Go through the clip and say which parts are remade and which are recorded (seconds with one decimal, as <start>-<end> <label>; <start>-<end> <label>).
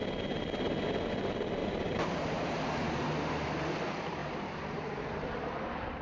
0.0-1.6 recorded; 1.6-3.1 remade; 3.1-4.2 recorded; 4.2-6.0 remade